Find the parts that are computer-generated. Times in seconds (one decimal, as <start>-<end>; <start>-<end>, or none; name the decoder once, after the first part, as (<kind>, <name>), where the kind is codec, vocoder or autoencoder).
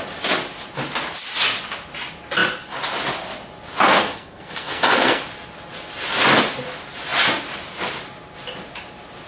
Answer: 4.0-5.2 (codec, SNAC)